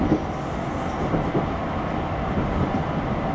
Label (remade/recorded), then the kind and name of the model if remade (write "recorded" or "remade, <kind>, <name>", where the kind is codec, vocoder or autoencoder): recorded